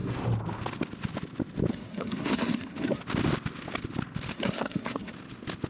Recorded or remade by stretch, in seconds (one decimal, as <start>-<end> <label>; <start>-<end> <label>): 0.0-1.7 recorded; 1.7-3.0 remade; 3.0-4.3 recorded; 4.3-5.1 remade; 5.1-5.7 recorded